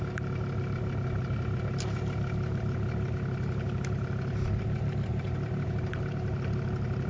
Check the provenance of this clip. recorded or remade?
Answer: recorded